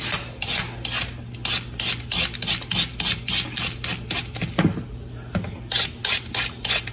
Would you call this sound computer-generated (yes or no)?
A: no